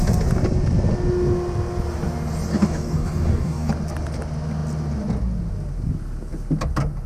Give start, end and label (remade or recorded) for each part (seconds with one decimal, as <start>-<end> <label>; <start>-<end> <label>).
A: 0.0-2.5 recorded; 2.5-3.7 remade; 3.7-7.1 recorded